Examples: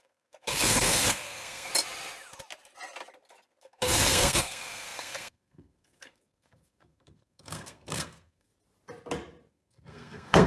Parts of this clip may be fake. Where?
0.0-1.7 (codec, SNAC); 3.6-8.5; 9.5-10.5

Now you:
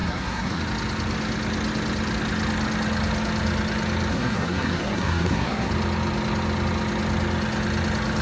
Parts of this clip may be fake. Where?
0.0-0.6 (codec, SNAC); 4.1-5.7

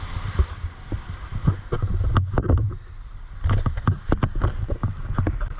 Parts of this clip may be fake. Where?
none

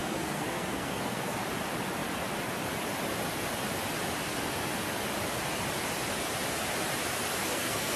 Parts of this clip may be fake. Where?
0.0-1.4 (codec, SNAC); 7.4-8.0